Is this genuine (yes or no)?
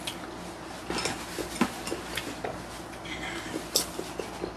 yes